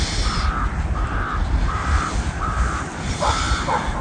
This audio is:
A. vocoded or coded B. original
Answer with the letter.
B